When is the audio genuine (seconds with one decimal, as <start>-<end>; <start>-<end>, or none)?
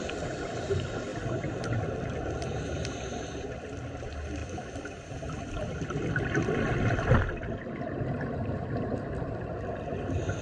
0.0-1.1; 1.8-4.4; 9.5-10.4